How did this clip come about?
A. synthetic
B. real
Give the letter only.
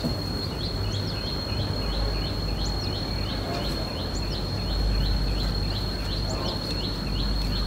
B